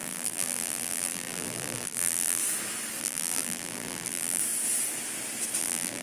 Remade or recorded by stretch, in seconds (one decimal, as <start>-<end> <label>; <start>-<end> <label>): 0.0-2.4 remade; 2.4-3.0 recorded; 3.0-4.4 remade; 4.4-5.6 recorded; 5.6-6.0 remade